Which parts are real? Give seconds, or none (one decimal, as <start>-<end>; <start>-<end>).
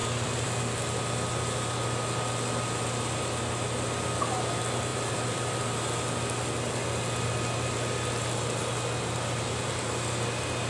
0.6-4.9; 5.7-10.7